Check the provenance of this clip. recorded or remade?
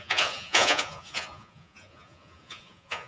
remade